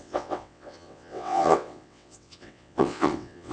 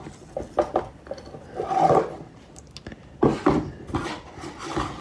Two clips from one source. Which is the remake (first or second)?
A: first